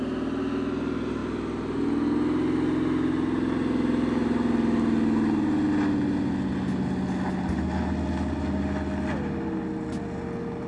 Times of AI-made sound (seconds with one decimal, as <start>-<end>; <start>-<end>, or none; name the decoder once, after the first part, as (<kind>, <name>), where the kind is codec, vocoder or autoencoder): none